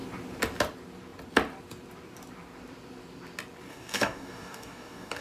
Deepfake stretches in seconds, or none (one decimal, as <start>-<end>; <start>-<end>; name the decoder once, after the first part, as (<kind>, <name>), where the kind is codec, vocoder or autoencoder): 3.7-5.2 (codec, DAC)